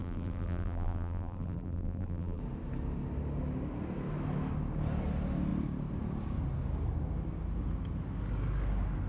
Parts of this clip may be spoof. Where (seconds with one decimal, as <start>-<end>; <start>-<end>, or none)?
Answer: 0.0-2.4